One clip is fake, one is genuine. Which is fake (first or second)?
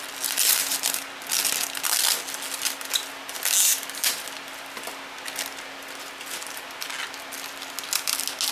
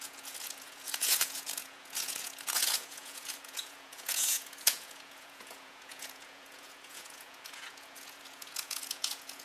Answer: second